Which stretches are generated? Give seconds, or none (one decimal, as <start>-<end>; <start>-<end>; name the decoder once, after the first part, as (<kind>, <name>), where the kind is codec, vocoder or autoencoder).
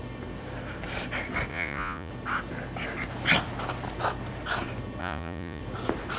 1.5-2.1 (vocoder, Vocos); 5.0-5.6